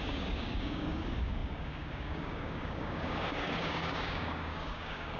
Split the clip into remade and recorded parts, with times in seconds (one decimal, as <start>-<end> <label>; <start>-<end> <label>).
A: 0.0-5.2 remade